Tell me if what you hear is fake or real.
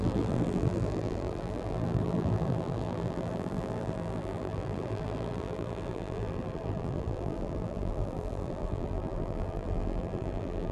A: fake